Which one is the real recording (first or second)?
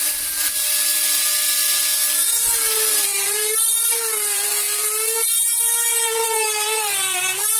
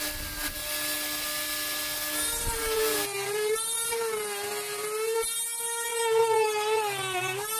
second